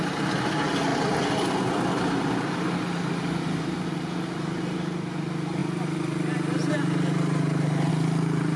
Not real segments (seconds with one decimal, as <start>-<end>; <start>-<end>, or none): none